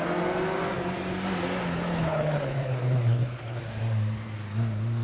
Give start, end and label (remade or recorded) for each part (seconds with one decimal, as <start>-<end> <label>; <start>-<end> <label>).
0.0-1.9 recorded; 1.9-3.6 remade; 3.6-5.0 recorded